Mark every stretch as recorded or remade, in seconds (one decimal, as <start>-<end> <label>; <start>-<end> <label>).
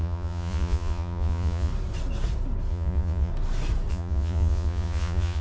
0.0-1.7 remade; 1.7-2.7 recorded; 2.7-3.3 remade; 3.3-3.9 recorded; 3.9-5.4 remade